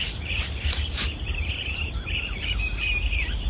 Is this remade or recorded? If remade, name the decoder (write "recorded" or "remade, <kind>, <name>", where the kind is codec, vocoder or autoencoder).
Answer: remade, vocoder, BigVGAN v2